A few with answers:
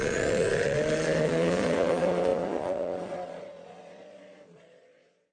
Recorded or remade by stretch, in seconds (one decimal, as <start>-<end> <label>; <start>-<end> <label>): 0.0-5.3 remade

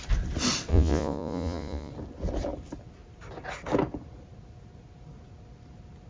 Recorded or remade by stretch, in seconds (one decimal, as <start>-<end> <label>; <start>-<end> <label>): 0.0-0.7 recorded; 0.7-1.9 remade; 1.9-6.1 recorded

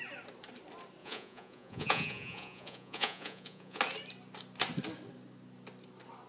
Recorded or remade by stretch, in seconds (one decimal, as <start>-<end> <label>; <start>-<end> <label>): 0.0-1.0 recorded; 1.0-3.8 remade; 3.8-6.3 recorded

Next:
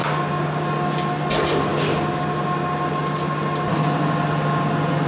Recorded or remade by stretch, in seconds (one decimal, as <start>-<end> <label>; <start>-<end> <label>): 0.0-5.1 recorded

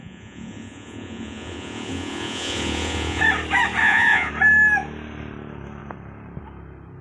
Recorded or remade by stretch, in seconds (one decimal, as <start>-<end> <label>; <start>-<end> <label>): 0.0-3.2 remade; 3.2-3.8 recorded; 3.8-4.3 remade; 4.3-7.0 recorded

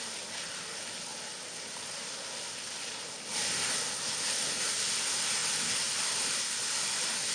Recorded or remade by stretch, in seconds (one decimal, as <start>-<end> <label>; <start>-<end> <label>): 0.0-7.3 recorded